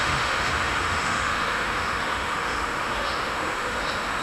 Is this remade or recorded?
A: remade